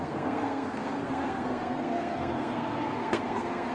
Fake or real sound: fake